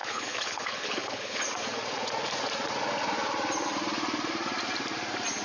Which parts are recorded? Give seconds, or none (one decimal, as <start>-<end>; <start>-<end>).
1.4-5.4